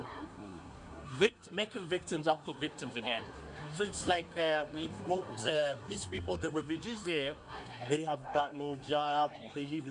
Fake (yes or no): yes